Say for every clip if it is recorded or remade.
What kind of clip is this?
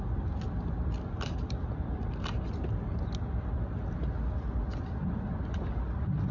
recorded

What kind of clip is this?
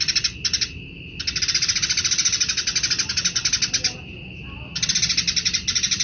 recorded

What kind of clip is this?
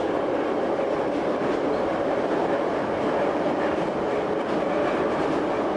recorded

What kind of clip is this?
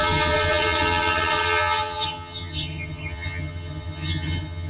remade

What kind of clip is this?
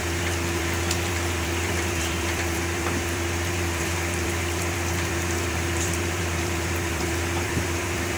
remade